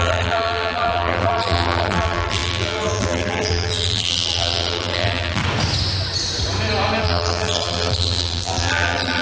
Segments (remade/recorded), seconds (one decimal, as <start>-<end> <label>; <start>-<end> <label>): 0.0-5.4 remade; 5.4-7.0 recorded; 7.0-9.2 remade